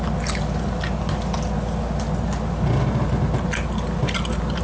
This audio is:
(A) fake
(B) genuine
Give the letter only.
B